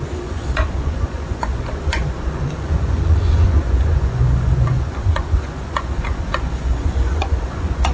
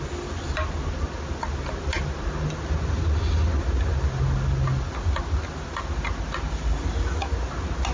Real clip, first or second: second